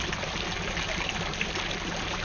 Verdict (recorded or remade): recorded